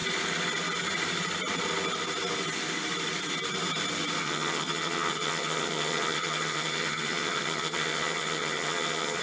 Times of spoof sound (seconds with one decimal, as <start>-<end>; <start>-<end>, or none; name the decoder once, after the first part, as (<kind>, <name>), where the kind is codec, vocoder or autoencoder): 4.2-9.2 (vocoder, HiFi-GAN)